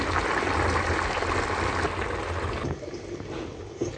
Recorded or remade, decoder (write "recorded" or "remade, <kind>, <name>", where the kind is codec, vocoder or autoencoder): recorded